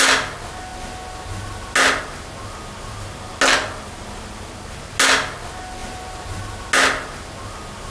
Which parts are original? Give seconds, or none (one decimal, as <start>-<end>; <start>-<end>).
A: 0.0-5.8; 6.4-7.9